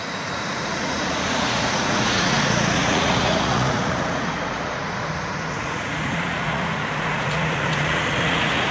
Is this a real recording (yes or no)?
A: no